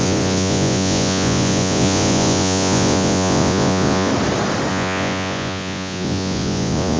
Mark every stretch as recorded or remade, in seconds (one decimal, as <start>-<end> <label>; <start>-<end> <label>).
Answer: 0.0-4.1 remade; 4.1-4.7 recorded; 4.7-7.0 remade